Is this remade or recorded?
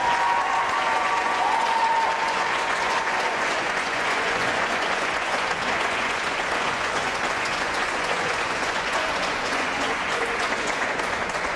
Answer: remade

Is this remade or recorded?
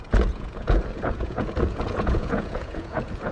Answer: remade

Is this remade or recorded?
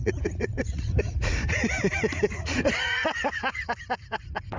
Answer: remade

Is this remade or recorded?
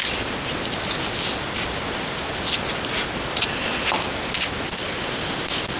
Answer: recorded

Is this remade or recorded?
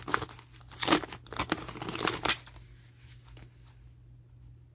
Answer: recorded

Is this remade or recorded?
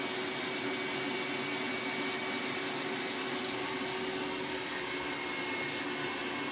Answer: recorded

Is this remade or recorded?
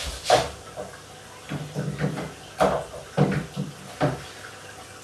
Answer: recorded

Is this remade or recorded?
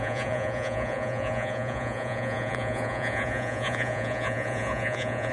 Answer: remade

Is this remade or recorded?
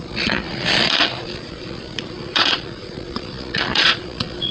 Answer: remade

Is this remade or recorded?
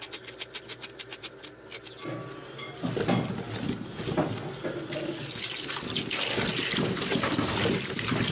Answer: recorded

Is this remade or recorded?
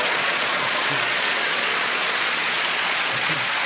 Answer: remade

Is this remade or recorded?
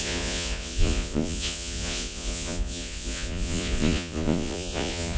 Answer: remade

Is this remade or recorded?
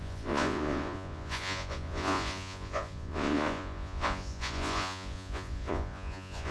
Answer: remade